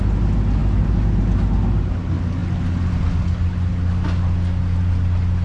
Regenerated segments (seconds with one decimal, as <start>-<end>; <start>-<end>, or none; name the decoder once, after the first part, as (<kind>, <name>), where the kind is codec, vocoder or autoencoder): none